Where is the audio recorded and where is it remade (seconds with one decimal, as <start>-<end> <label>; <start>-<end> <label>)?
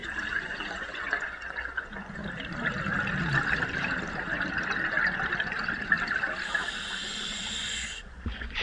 0.0-2.2 remade; 2.2-7.0 recorded; 7.0-8.6 remade